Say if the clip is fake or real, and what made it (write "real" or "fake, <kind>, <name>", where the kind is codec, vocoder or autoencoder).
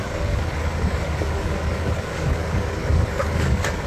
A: fake, codec, DAC